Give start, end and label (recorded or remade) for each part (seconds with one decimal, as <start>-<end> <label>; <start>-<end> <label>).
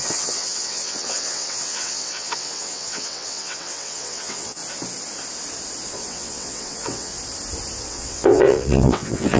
0.0-4.6 remade; 4.6-5.9 recorded; 5.9-7.1 remade; 7.1-7.8 recorded; 7.8-9.4 remade